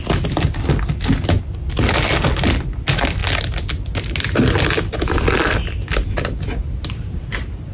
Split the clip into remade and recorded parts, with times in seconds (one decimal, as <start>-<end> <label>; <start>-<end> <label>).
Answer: 0.0-7.7 recorded